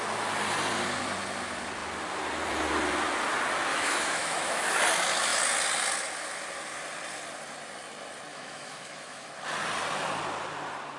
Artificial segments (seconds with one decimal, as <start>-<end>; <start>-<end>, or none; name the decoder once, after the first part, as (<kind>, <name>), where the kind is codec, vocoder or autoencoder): 3.7-4.8 (autoencoder, DAC-VAE); 8.3-9.3